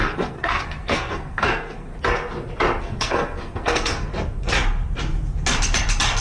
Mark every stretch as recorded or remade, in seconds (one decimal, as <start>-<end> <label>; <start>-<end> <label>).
0.0-1.9 remade; 1.9-2.8 recorded; 2.8-4.1 remade; 4.1-6.2 recorded